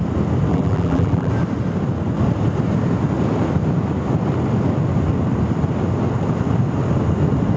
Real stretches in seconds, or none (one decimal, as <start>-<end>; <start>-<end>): 0.0-0.5; 1.3-7.6